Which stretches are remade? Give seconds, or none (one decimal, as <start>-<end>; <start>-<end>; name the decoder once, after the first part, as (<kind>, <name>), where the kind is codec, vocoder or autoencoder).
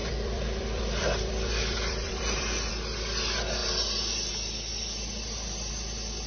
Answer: 0.0-2.7 (vocoder, BigVGAN v2)